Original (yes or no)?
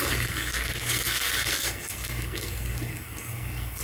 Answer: no